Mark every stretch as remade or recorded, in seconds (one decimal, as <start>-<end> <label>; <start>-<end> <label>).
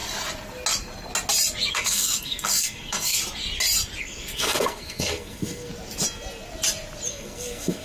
0.0-1.7 recorded; 1.7-3.2 remade; 3.2-4.0 recorded; 4.0-5.7 remade; 5.7-7.1 recorded; 7.1-7.8 remade